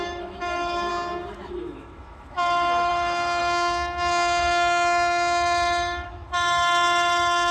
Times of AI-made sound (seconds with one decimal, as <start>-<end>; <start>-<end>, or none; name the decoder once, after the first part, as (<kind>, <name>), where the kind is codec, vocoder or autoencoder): 0.0-0.9 (autoencoder, DAC-VAE); 1.5-7.5